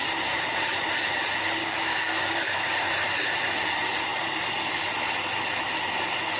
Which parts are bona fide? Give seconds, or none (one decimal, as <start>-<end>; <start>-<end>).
0.0-1.6; 2.7-6.4